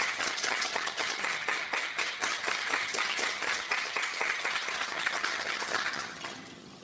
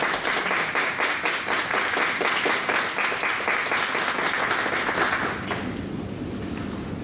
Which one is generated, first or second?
first